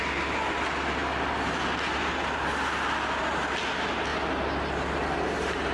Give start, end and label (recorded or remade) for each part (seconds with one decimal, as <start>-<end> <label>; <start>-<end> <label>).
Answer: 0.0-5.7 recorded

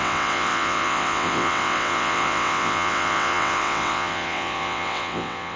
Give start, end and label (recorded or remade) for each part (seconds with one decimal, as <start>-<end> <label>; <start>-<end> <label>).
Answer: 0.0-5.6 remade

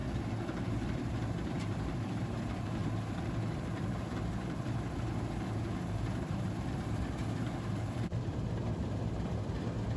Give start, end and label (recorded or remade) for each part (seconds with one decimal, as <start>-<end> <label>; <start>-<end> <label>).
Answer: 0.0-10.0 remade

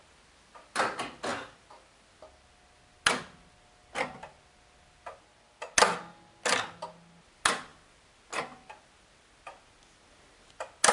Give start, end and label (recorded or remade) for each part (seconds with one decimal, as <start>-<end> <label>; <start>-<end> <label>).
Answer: 0.0-10.9 recorded